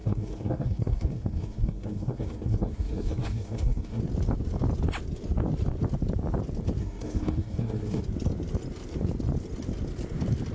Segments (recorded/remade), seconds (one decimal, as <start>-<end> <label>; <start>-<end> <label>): 0.0-4.0 remade; 4.0-6.8 recorded; 6.8-8.0 remade; 8.0-10.5 recorded